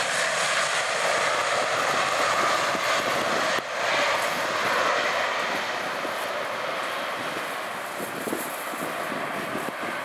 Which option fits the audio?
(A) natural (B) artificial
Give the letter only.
A